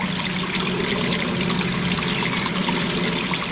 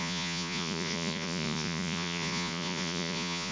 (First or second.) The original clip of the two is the first